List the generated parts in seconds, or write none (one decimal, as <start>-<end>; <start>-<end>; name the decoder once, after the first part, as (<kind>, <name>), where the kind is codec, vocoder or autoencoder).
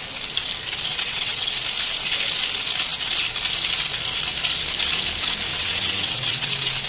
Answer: 0.9-1.6 (vocoder, WaveNeXt); 5.5-6.5